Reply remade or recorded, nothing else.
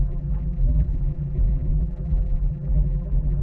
remade